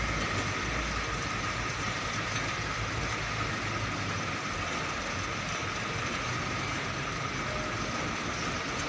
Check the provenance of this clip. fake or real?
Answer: real